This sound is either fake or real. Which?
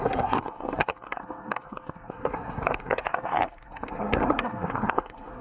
fake